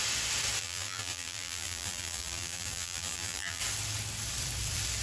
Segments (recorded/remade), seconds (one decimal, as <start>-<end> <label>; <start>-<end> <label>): 0.0-0.6 recorded; 0.6-3.6 remade; 3.6-5.0 recorded